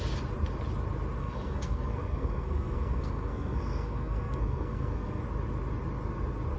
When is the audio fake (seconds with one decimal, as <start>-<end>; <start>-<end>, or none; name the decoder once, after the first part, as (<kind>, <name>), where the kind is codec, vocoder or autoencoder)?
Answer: 1.2-5.2 (codec, SNAC)